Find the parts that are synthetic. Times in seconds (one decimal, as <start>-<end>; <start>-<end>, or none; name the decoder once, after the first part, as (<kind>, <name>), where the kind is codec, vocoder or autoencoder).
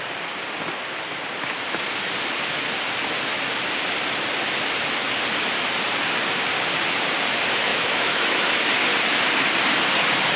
7.7-8.6 (autoencoder, DAC-VAE)